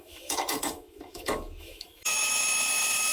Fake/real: fake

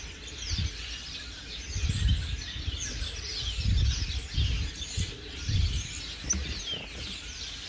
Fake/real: real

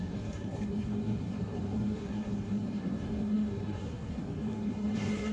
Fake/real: fake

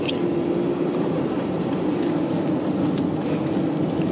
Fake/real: real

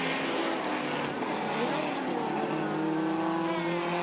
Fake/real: real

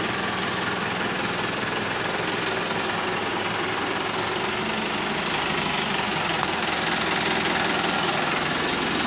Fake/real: real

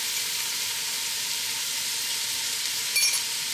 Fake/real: real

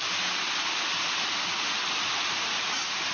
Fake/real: real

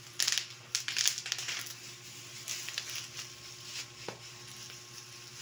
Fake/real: real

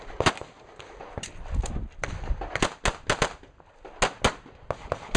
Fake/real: real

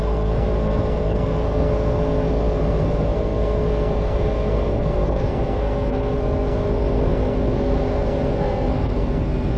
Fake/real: fake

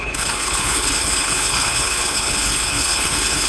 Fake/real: fake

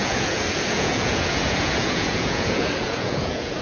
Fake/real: fake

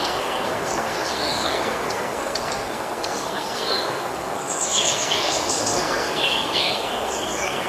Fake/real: fake